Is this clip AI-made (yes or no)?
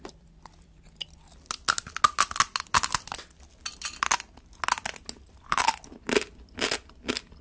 no